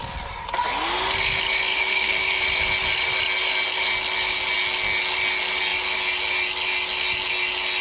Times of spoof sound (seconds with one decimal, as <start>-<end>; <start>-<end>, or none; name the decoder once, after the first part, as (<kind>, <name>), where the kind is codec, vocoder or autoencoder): 1.7-2.4 (codec, SNAC)